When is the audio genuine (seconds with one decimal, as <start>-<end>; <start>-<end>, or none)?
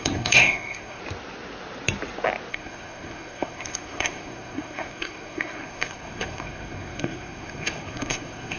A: 1.0-2.5